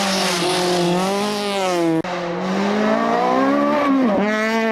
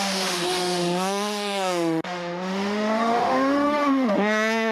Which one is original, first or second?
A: first